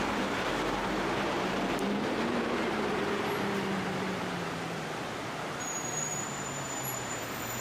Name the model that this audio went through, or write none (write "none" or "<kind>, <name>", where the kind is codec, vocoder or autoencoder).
vocoder, BigVGAN v2